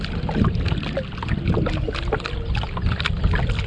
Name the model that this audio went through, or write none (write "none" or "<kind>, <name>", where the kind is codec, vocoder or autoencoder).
none